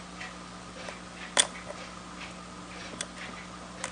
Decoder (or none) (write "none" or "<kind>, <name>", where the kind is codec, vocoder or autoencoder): none